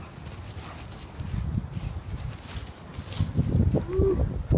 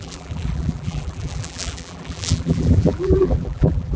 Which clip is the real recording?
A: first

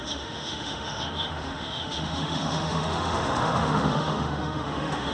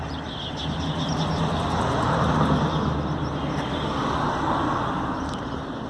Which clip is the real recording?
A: second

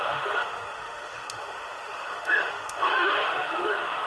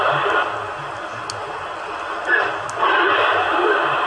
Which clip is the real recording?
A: second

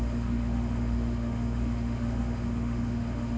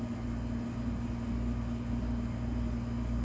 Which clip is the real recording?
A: second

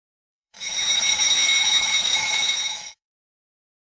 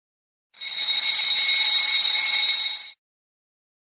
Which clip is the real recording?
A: second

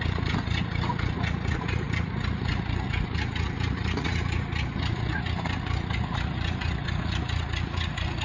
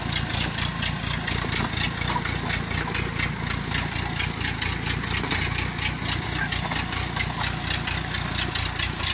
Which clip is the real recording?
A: second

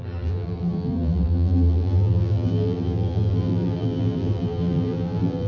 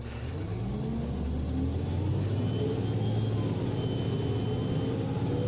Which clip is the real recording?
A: second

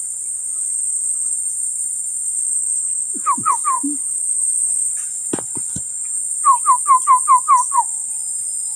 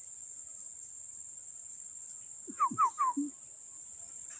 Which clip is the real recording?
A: second